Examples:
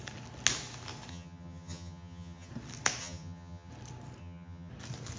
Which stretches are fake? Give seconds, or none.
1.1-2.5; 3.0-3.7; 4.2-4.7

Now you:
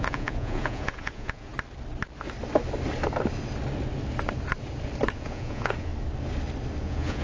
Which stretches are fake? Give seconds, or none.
0.0-1.5; 5.1-5.9; 6.8-7.2

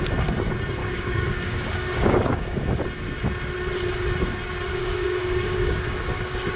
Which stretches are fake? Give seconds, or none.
0.8-2.8; 4.7-6.6

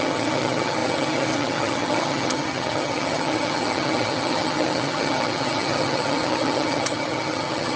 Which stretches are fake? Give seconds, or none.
0.0-7.8